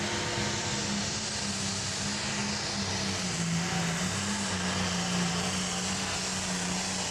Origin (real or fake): real